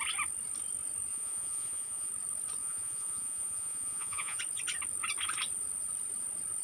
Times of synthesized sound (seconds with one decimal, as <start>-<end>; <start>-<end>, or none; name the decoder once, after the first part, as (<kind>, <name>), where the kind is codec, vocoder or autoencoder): 1.1-2.1 (vocoder, Vocos); 2.6-4.4